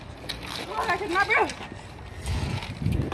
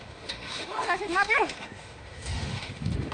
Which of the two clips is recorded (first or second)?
first